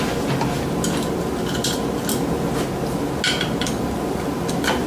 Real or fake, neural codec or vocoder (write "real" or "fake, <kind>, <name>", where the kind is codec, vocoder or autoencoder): real